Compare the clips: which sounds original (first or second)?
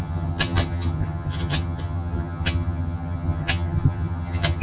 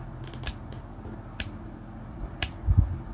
second